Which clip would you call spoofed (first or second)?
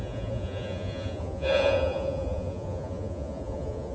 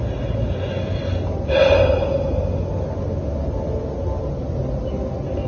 first